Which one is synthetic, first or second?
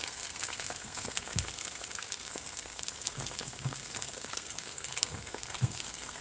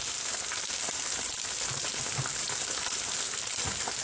first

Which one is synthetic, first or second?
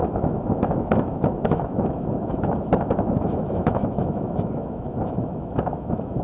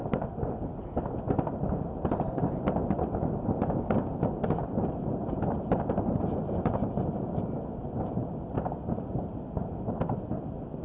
first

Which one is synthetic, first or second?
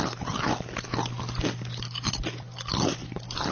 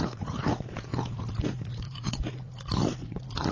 second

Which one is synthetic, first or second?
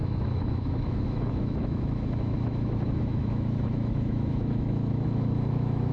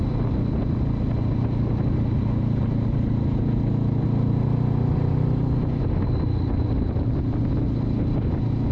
first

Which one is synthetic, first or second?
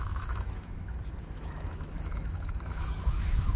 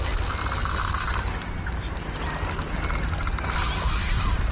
first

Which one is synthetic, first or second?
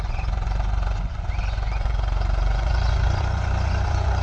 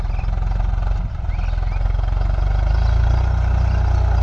first